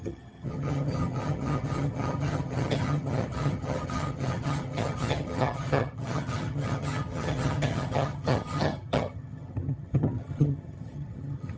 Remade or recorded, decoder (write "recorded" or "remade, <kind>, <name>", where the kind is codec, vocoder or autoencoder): remade, vocoder, HiFi-GAN